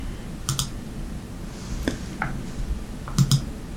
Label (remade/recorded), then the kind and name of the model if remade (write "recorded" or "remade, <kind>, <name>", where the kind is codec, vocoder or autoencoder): recorded